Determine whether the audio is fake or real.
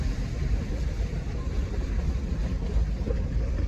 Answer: real